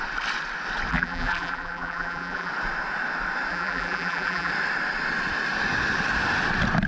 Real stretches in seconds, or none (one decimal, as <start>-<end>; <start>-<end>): 0.0-0.9; 2.5-3.5; 4.5-6.9